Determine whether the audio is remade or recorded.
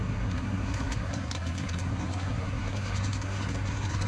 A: remade